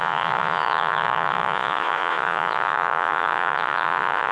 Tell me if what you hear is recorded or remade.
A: remade